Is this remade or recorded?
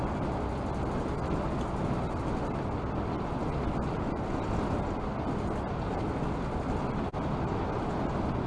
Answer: recorded